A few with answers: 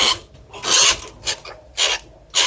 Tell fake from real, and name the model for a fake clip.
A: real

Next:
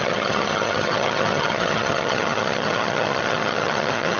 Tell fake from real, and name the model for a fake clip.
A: fake, vocoder, HiFi-GAN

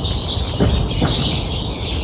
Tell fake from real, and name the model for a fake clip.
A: real